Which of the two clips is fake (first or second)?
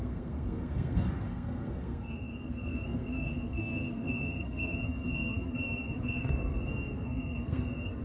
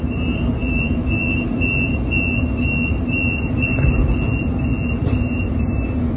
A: first